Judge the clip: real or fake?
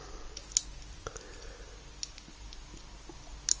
real